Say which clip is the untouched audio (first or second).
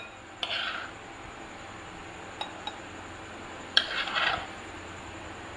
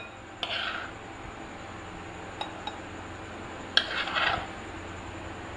second